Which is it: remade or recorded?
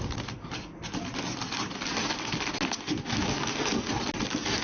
recorded